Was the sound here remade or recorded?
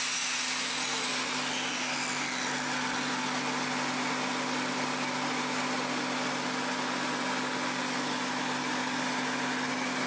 recorded